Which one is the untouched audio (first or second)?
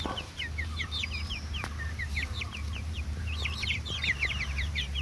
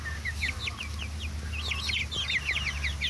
second